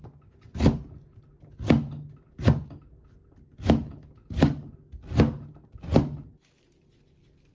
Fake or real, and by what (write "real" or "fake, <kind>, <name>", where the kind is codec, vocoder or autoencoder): real